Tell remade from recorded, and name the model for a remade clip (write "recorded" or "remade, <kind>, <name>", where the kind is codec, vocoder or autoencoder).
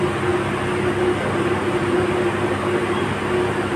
recorded